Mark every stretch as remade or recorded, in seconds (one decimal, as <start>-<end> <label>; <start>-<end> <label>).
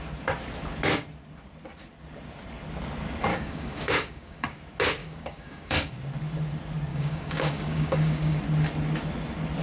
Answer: 0.0-3.3 recorded; 3.3-4.6 remade; 4.6-5.0 recorded; 5.0-6.0 remade; 6.0-6.9 recorded; 6.9-8.4 remade; 8.4-9.6 recorded